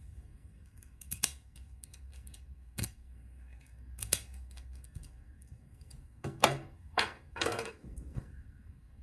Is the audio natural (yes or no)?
no